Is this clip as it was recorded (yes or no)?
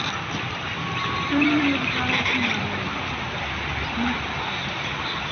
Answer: no